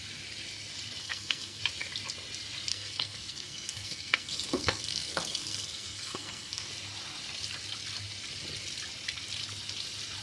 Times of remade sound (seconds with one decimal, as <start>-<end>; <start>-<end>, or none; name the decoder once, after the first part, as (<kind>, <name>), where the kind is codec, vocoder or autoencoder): 1.0-1.6 (codec, SNAC); 2.7-6.7